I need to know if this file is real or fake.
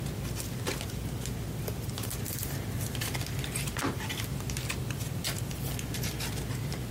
real